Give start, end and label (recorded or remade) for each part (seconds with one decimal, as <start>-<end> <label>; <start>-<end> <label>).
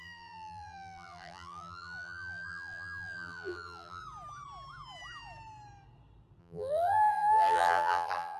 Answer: 0.0-4.0 remade; 4.0-6.4 recorded; 6.4-8.4 remade